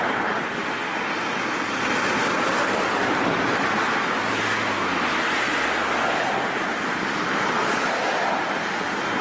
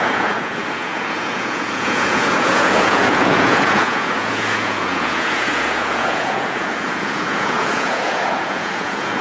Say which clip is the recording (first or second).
first